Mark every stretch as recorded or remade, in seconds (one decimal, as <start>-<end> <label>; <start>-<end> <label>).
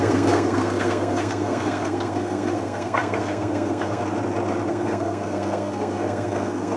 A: 0.0-4.0 remade; 4.0-4.7 recorded; 4.7-6.8 remade